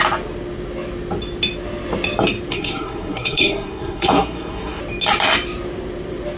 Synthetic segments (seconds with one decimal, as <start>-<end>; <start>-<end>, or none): 2.5-4.8